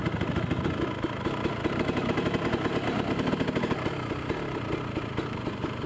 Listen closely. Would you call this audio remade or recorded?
recorded